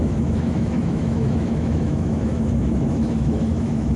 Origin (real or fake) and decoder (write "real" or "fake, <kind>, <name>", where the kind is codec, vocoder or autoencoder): fake, autoencoder, DAC-VAE